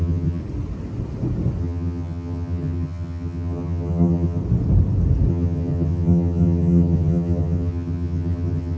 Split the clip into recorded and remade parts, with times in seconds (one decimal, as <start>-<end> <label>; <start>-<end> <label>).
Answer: 0.0-0.4 remade; 0.4-1.6 recorded; 1.6-4.4 remade; 4.4-5.3 recorded; 5.3-8.8 remade